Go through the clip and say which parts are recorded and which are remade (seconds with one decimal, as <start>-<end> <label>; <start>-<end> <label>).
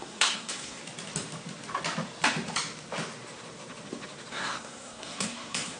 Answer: 0.0-0.8 remade; 0.8-4.3 recorded; 4.3-5.8 remade